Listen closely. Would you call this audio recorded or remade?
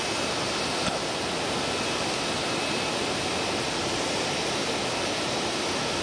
recorded